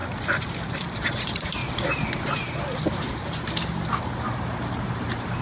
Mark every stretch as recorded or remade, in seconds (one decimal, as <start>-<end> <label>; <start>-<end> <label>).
0.0-1.6 remade; 1.6-4.0 recorded; 4.0-5.4 remade